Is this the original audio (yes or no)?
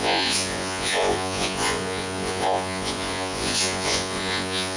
no